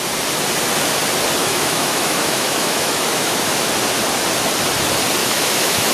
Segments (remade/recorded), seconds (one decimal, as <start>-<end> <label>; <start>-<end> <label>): 0.0-1.4 recorded; 1.4-3.7 remade; 3.7-5.2 recorded; 5.2-5.9 remade

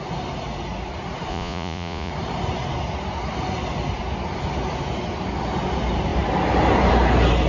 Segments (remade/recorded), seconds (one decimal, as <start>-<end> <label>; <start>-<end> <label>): 0.0-1.3 recorded; 1.3-2.1 remade; 2.1-7.5 recorded

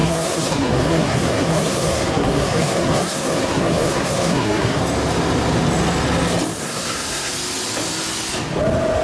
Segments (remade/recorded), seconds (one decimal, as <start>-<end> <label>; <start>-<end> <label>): 0.0-4.8 remade; 4.8-6.6 recorded; 6.6-7.3 remade; 7.3-9.0 recorded

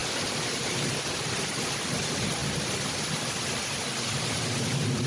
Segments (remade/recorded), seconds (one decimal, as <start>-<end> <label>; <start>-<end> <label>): 0.0-0.6 remade; 0.6-5.1 recorded

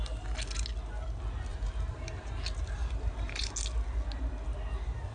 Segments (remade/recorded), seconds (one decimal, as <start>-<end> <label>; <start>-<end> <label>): 0.0-1.5 recorded; 1.5-2.3 remade; 2.3-2.8 recorded; 2.8-3.5 remade; 3.5-5.1 recorded